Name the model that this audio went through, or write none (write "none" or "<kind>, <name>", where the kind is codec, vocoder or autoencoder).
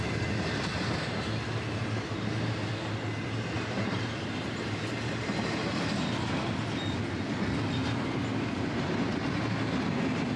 none